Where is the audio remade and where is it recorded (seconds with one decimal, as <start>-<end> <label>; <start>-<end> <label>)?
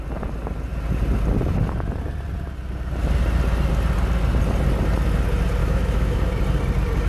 0.0-5.6 recorded; 5.6-6.2 remade; 6.2-7.1 recorded